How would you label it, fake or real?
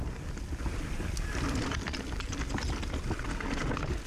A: real